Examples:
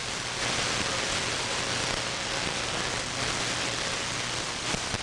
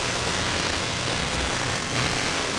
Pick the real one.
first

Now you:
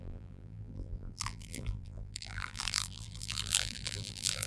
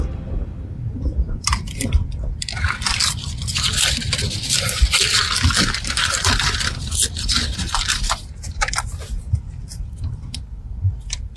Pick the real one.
second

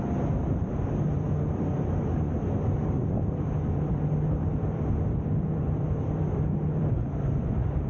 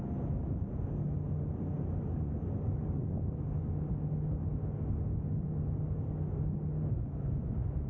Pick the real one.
second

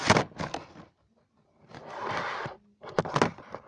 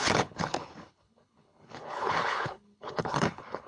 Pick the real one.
first